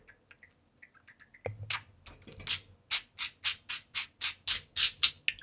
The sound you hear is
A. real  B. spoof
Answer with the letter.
A